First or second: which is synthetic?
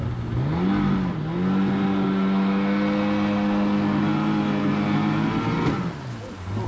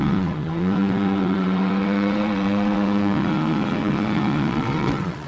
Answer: second